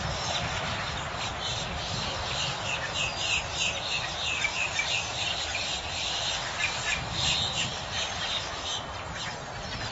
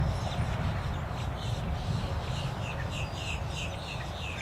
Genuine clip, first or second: second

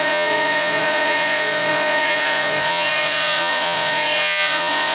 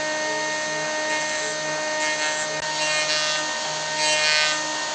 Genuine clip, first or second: second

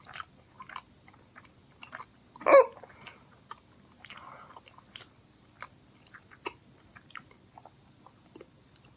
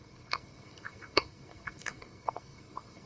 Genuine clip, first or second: first